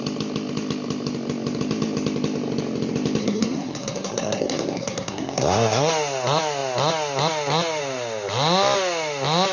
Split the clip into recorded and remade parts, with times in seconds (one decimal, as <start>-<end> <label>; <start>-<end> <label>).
0.0-3.2 recorded; 3.2-5.9 remade; 5.9-9.5 recorded